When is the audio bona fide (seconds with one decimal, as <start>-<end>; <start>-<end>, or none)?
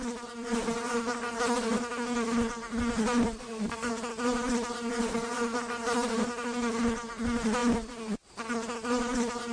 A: 0.0-3.4; 3.9-9.5